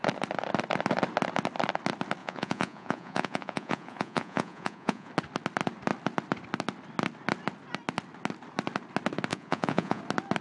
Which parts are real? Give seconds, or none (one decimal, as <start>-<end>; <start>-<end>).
0.0-2.2; 5.1-9.3; 10.0-10.4